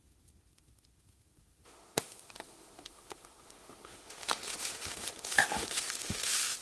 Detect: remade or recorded remade